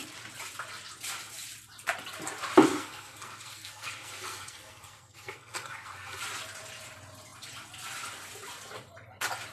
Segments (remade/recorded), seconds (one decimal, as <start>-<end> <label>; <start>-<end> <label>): 0.0-2.7 recorded; 2.7-6.2 remade; 6.2-9.5 recorded

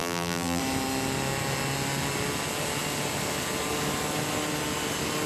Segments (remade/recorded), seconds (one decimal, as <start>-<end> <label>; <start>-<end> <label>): 0.0-0.6 remade; 0.6-5.3 recorded

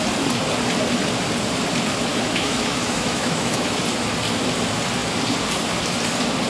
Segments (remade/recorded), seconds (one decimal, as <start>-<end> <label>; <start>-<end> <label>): 0.0-2.1 recorded; 2.1-3.8 remade; 3.8-6.5 recorded

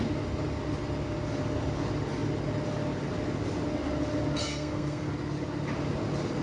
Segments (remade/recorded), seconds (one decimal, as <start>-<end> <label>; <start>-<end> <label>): 0.0-4.4 recorded; 4.4-5.1 remade; 5.1-6.4 recorded

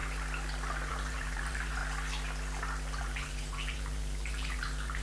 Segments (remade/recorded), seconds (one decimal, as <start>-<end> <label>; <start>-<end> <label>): 0.0-0.9 recorded; 0.9-1.8 remade; 1.8-3.0 recorded; 3.0-5.0 remade

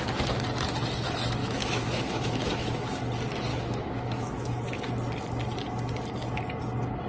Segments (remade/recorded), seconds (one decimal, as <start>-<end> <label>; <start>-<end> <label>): 0.0-1.4 recorded; 1.4-3.0 remade; 3.0-3.5 recorded; 3.5-4.9 remade; 4.9-7.1 recorded

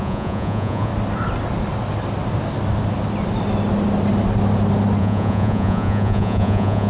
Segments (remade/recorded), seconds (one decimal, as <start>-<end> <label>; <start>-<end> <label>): 0.0-0.9 remade; 0.9-5.0 recorded; 5.0-6.9 remade